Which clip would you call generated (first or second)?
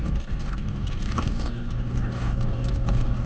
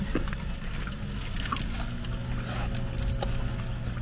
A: first